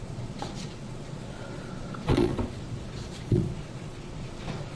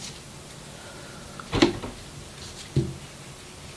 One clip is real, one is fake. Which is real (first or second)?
second